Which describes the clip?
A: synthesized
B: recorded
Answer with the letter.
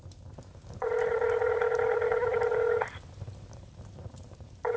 A